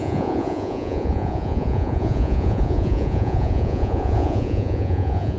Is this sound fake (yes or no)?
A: yes